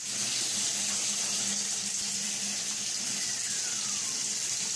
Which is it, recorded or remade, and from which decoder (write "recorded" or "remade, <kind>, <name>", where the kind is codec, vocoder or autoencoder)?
remade, vocoder, BigVGAN v2